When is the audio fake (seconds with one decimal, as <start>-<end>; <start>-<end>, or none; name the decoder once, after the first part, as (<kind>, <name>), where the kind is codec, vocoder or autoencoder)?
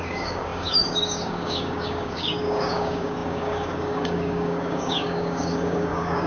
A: 0.0-6.3 (codec, DAC)